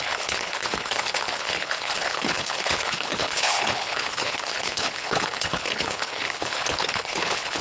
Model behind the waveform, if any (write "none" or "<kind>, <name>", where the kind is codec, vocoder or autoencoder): codec, HILCodec